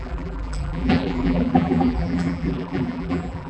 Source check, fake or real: fake